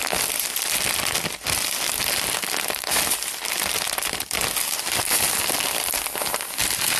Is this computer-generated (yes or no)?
no